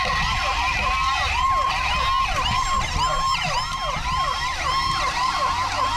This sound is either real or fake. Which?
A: real